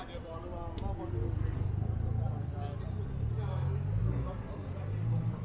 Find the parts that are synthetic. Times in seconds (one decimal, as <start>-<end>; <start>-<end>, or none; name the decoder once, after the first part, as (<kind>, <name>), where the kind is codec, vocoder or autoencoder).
none